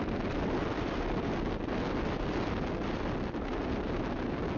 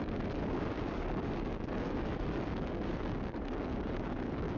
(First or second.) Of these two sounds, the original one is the first